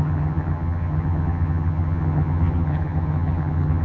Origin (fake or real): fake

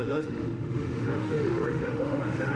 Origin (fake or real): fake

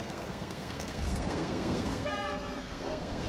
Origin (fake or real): fake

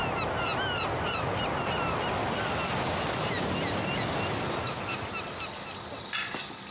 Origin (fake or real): real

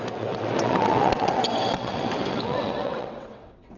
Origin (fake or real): fake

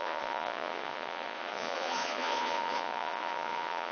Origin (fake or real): fake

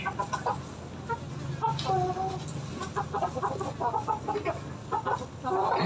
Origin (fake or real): real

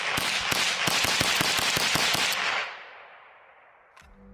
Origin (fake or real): real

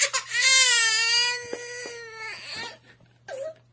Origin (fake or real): real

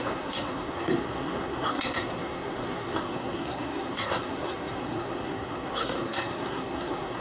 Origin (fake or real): fake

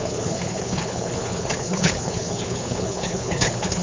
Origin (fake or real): fake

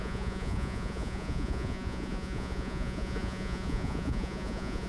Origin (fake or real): fake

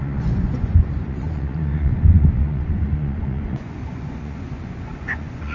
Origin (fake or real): fake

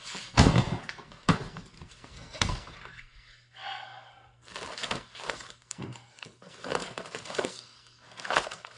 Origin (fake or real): fake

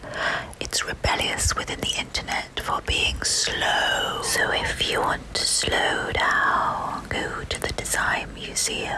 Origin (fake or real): real